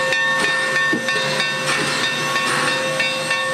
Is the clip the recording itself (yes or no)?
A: yes